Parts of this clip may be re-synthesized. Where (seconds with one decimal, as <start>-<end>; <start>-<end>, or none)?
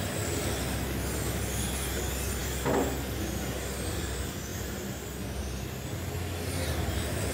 none